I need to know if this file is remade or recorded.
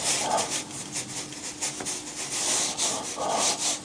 recorded